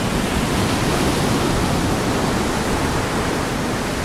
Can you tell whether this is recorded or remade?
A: recorded